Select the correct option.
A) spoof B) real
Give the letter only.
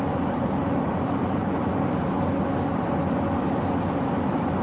B